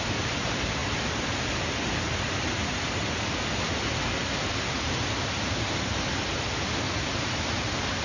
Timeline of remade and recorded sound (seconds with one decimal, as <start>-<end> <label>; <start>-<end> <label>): 0.0-8.0 recorded